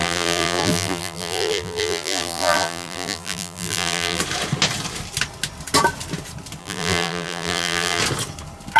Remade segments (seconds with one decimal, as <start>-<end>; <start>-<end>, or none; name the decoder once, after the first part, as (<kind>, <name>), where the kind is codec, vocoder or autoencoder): 0.0-4.2 (vocoder, BigVGAN v2); 6.6-8.0